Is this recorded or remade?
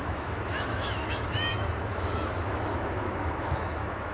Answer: remade